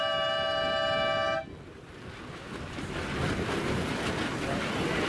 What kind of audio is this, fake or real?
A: real